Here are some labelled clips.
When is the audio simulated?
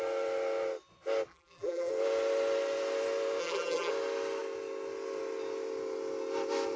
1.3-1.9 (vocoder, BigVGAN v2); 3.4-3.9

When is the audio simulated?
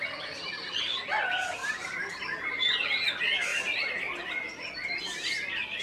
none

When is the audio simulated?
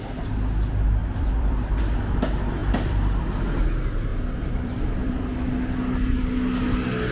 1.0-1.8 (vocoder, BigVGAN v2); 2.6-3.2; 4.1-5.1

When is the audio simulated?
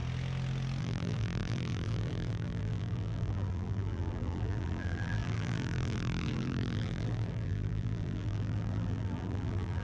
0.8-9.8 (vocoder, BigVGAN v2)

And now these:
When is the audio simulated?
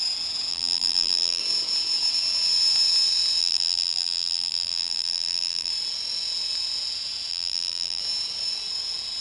0.5-1.4 (vocoder, BigVGAN v2); 3.4-5.7; 7.3-8.0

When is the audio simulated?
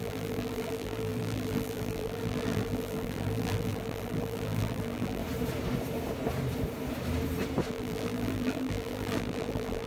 0.0-5.2 (vocoder, BigVGAN v2); 7.7-9.9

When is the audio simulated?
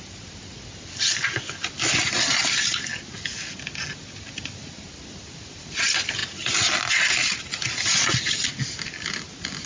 0.0-2.9 (vocoder, BigVGAN v2); 4.2-9.7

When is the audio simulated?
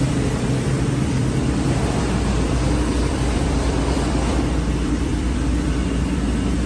0.0-6.7 (vocoder, BigVGAN v2)